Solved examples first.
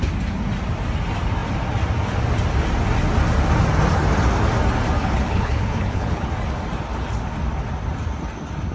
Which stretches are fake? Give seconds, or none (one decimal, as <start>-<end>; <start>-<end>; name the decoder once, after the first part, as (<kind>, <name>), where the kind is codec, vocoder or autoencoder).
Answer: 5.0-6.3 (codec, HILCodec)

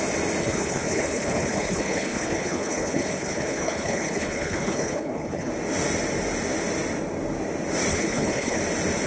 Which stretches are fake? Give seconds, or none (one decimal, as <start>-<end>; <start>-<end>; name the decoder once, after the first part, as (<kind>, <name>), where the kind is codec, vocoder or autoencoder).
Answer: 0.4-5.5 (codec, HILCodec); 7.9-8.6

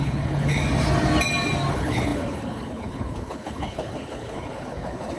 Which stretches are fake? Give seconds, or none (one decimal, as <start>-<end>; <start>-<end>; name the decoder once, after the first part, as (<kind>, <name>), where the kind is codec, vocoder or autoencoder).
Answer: 0.0-0.6 (codec, HILCodec); 1.7-5.2